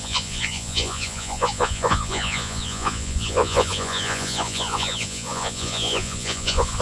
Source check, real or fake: fake